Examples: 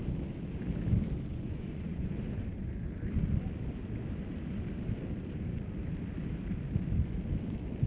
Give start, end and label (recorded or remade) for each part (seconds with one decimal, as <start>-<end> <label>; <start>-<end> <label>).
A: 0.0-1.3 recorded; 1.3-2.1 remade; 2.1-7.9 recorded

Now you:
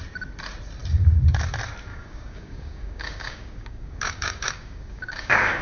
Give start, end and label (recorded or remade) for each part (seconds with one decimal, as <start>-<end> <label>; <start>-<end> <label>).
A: 0.0-1.9 recorded; 1.9-5.6 remade

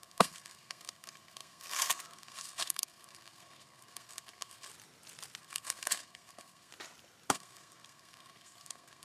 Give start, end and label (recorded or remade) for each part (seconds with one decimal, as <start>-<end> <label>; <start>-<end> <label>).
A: 0.0-4.7 remade; 4.7-5.4 recorded; 5.4-6.7 remade; 6.7-7.3 recorded; 7.3-9.0 remade

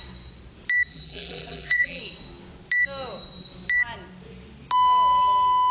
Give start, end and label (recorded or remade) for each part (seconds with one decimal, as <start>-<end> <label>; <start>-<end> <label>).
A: 0.0-0.9 recorded; 0.9-2.0 remade; 2.0-5.7 recorded